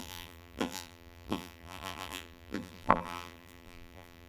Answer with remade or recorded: remade